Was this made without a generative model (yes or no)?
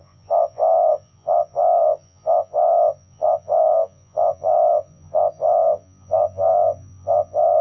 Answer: no